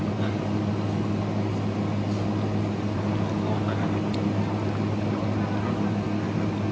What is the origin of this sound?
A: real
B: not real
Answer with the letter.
A